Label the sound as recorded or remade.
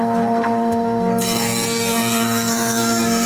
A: remade